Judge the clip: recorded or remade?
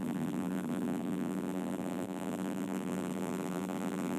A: remade